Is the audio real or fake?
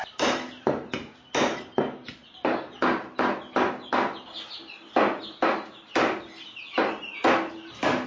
real